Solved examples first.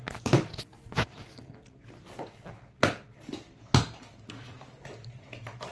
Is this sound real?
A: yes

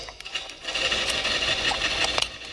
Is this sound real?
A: no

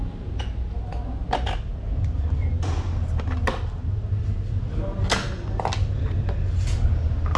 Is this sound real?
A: yes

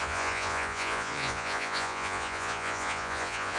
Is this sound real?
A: no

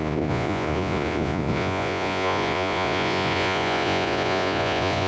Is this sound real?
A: no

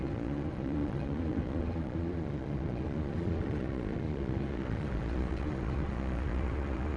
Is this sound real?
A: no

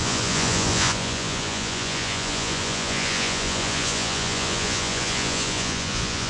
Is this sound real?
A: no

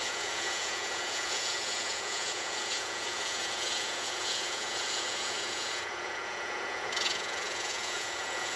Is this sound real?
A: no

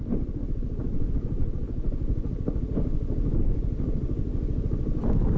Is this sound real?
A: yes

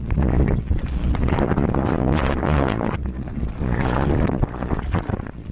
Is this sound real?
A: no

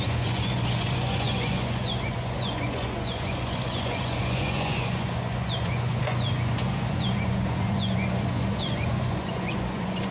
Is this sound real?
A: no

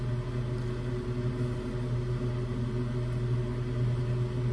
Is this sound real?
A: yes